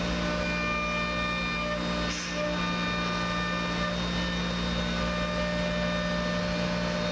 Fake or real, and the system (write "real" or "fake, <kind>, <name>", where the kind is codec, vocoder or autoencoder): real